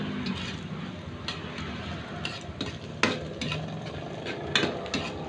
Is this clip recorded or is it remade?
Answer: recorded